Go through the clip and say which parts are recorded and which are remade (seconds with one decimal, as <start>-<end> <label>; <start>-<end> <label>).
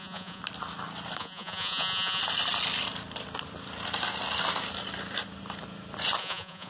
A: 0.0-0.4 remade; 0.4-1.2 recorded; 1.2-2.2 remade; 2.2-6.2 recorded; 6.2-6.7 remade